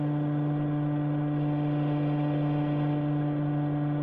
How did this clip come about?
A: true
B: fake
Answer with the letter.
A